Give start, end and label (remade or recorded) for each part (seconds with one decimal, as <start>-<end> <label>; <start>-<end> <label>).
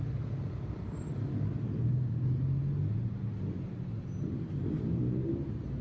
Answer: 0.0-5.8 recorded